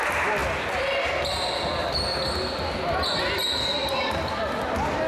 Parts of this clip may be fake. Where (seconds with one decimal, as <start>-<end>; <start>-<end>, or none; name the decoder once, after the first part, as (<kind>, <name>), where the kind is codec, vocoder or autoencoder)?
3.8-4.4 (vocoder, BigVGAN v2)